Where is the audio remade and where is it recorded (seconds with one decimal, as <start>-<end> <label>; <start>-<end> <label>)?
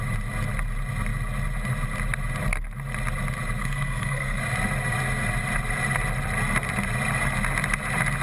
0.0-3.6 recorded; 3.6-4.4 remade; 4.4-8.2 recorded